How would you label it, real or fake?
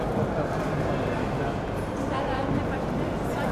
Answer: real